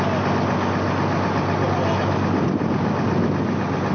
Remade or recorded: recorded